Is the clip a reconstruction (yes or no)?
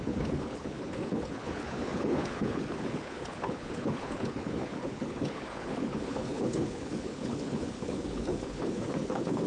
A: yes